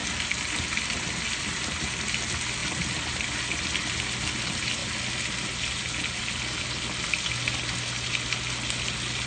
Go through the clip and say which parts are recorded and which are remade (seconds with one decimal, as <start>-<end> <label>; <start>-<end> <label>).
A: 0.0-9.3 recorded